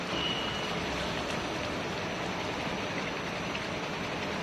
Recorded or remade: recorded